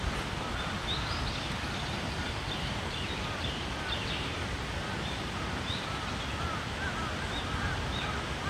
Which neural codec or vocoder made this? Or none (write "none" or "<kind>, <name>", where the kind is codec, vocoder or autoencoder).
none